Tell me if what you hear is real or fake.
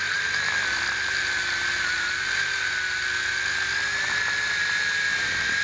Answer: real